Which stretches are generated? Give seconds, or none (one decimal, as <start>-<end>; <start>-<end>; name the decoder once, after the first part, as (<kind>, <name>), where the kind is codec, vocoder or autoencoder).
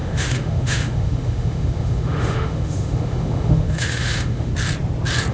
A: 0.0-4.5 (autoencoder, DAC-VAE)